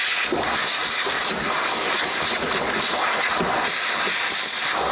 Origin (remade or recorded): recorded